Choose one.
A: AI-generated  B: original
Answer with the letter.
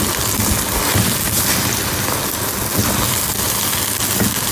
B